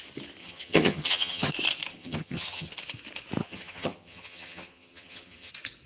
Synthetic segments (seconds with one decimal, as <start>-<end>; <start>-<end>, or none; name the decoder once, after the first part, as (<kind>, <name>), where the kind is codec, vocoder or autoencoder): 0.4-1.5 (vocoder, HiFi-GAN); 1.9-2.7; 3.4-5.5